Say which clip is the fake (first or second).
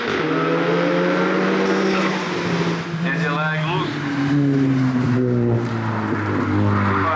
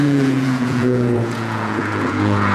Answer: second